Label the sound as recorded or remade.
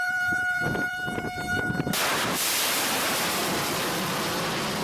remade